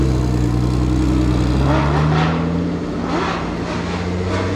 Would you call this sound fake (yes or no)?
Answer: no